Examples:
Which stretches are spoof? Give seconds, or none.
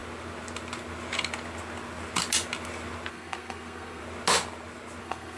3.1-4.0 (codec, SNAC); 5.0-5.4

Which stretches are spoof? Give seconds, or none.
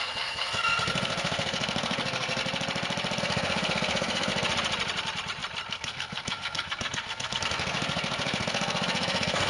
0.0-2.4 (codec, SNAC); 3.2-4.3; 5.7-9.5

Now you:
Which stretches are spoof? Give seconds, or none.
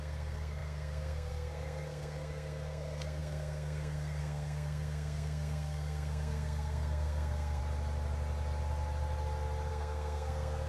0.0-7.6 (codec, SNAC); 9.7-10.7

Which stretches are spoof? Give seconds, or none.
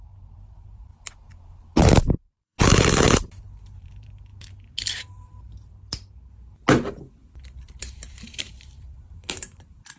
0.0-0.9 (vocoder, BigVGAN v2); 1.8-4.3; 4.9-5.7; 7.8-10.0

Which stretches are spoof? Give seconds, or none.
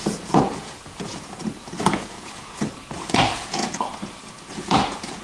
0.0-5.2 (vocoder, Vocos)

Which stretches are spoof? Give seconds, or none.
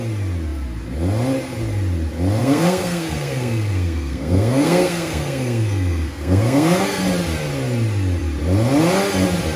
2.4-7.0 (codec, SNAC)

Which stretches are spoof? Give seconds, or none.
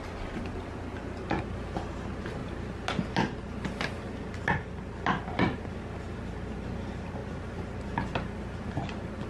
none